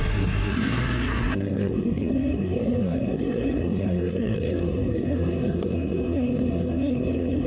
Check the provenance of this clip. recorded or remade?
remade